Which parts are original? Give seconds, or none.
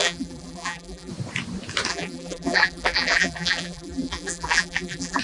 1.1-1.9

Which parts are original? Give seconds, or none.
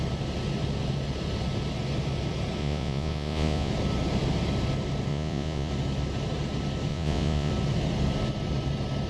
0.0-2.6; 3.7-5.1; 5.7-6.9; 7.5-9.1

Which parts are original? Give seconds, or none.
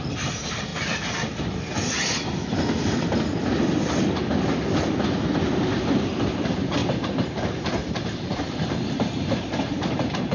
0.7-6.0; 6.8-7.3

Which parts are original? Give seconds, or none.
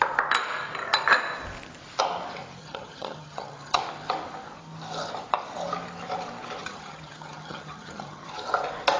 0.0-2.6; 3.8-6.6; 8.3-9.0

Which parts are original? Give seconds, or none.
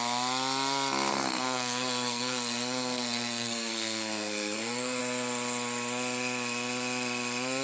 0.0-1.1; 5.0-7.6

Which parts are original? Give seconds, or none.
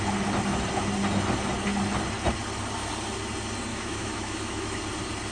0.0-3.7; 4.8-5.3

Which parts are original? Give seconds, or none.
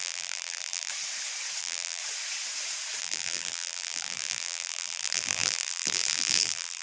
0.9-1.6; 2.0-3.0